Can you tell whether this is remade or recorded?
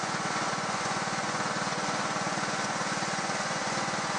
remade